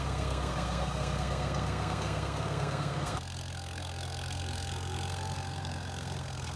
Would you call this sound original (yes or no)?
no